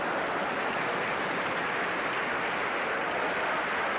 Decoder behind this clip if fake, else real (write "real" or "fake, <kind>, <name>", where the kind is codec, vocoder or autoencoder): real